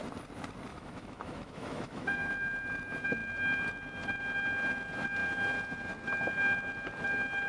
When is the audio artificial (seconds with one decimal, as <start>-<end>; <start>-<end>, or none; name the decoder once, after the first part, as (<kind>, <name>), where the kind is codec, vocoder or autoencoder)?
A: 0.7-2.3 (autoencoder, DAC-VAE)